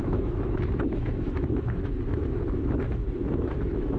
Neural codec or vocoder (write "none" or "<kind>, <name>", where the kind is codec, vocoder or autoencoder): autoencoder, DAC-VAE